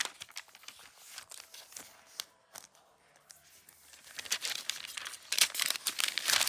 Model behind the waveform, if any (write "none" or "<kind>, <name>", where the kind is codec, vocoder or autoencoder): none